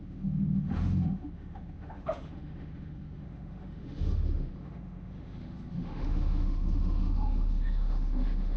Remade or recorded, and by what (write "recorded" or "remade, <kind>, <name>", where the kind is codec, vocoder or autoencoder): remade, autoencoder, DAC-VAE